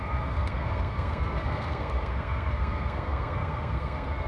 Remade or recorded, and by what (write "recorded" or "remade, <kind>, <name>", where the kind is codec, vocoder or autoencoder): remade, codec, SNAC